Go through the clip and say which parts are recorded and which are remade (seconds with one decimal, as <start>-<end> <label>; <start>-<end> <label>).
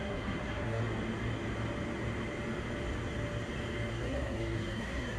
0.0-0.8 remade; 0.8-3.9 recorded; 3.9-5.2 remade